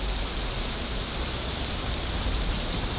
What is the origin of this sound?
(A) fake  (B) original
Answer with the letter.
A